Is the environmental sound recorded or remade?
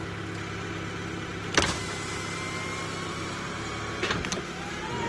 recorded